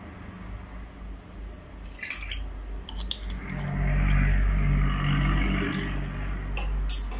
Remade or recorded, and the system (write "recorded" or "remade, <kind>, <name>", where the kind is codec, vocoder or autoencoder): recorded